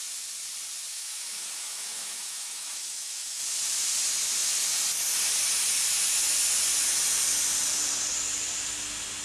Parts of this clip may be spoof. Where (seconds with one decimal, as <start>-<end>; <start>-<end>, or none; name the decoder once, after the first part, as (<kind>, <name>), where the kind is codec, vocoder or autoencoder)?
0.9-3.4 (autoencoder, DAC-VAE)